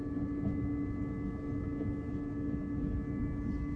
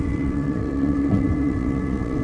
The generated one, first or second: second